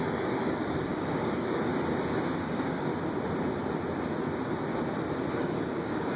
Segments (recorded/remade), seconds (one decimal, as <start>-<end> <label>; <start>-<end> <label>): 0.0-1.7 remade; 1.7-2.4 recorded; 2.4-2.9 remade; 2.9-5.3 recorded; 5.3-6.2 remade